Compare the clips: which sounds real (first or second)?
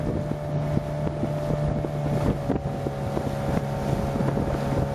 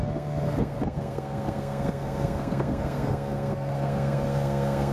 first